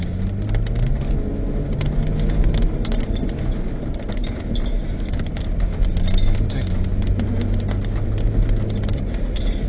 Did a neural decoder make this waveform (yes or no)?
no